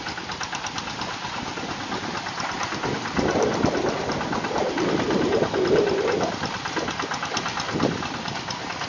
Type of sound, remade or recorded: recorded